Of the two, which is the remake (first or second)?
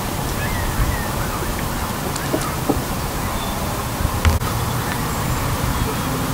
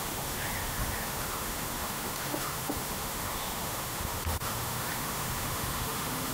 second